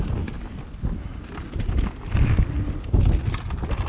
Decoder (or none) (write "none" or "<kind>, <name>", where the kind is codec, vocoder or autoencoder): none